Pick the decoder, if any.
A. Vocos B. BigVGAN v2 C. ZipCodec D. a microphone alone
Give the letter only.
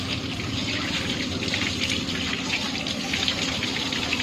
B